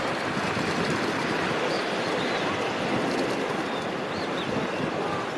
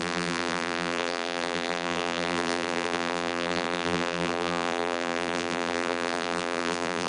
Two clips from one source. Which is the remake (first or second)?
second